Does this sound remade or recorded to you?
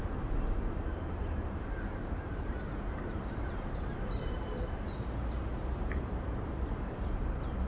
remade